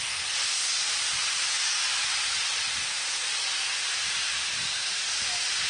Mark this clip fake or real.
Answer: real